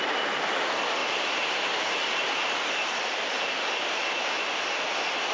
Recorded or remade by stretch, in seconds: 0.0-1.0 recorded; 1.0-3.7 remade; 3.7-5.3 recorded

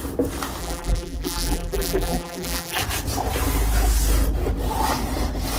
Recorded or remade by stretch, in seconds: 0.0-0.6 recorded; 0.6-2.8 remade; 2.8-5.6 recorded

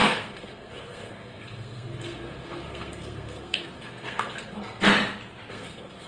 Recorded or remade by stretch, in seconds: 0.0-4.9 remade; 4.9-5.5 recorded; 5.5-6.1 remade

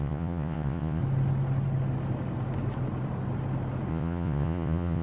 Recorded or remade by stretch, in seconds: 0.0-1.0 remade; 1.0-3.9 recorded; 3.9-5.0 remade